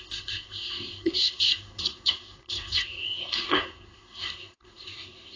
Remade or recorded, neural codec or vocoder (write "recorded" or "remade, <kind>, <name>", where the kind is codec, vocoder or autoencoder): remade, codec, SNAC